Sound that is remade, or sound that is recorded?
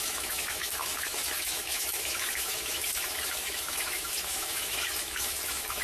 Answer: remade